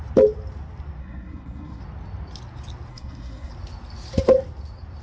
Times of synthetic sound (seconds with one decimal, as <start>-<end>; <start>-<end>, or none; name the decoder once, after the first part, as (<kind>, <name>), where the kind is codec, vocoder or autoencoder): 1.0-1.8 (codec, SNAC); 2.9-3.5